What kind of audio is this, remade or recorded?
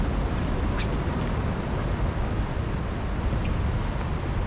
recorded